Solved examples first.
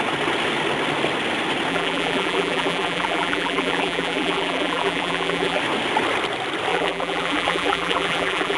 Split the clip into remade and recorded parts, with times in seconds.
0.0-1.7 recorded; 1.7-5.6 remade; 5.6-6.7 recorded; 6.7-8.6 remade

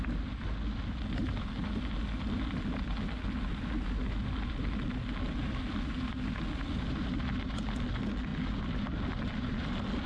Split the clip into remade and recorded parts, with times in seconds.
0.0-10.1 recorded

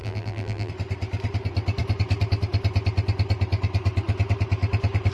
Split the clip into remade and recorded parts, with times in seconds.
0.0-0.7 remade; 0.7-5.1 recorded

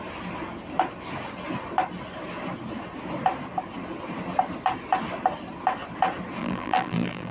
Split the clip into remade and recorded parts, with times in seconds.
0.0-6.4 recorded; 6.4-7.3 remade

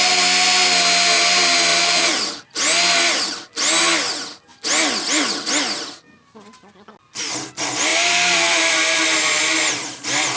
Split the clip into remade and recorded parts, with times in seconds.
0.0-1.7 recorded; 1.7-2.3 remade; 2.3-7.9 recorded; 7.9-8.7 remade; 8.7-10.4 recorded

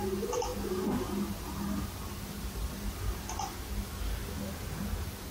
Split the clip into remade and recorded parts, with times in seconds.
0.0-5.3 recorded

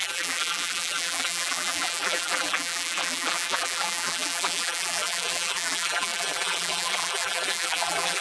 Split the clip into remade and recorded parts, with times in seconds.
0.0-8.2 remade

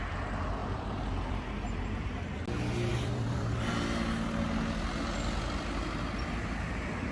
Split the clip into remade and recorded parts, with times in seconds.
0.0-0.6 recorded; 0.6-2.2 remade; 2.2-2.9 recorded; 2.9-3.7 remade; 3.7-7.1 recorded